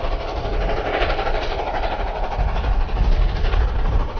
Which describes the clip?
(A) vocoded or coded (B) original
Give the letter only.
B